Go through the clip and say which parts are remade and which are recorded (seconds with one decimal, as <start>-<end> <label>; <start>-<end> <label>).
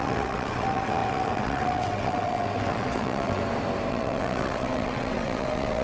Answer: 0.0-3.4 remade; 3.4-3.9 recorded; 3.9-5.8 remade